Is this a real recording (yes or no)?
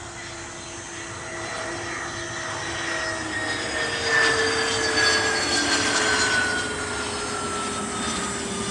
yes